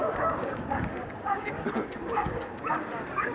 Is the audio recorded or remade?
remade